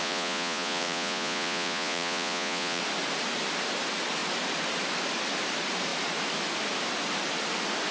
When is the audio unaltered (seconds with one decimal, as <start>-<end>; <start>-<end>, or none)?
2.8-7.9